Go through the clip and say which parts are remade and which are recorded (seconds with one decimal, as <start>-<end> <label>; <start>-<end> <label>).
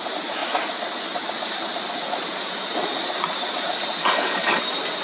0.0-4.0 recorded; 4.0-4.6 remade; 4.6-5.0 recorded